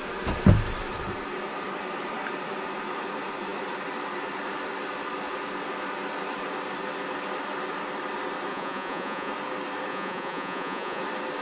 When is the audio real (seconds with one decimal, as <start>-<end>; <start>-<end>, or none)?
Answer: 0.0-8.5; 9.3-9.9; 11.0-11.4